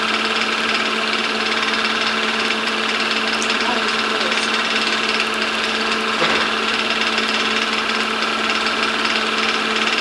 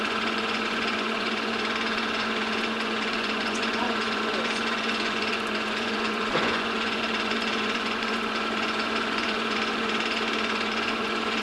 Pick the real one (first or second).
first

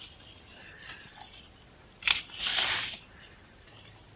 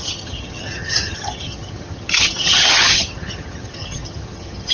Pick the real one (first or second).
first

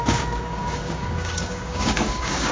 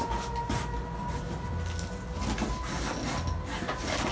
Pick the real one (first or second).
second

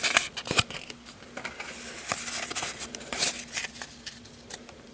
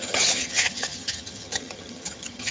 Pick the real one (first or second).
first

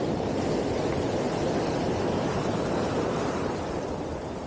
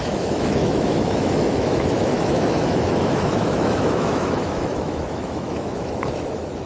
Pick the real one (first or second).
first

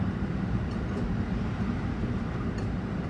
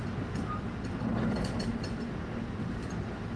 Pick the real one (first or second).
second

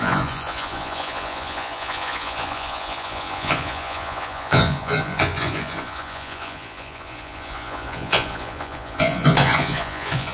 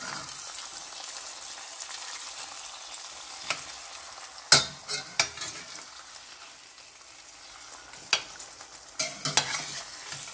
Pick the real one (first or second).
second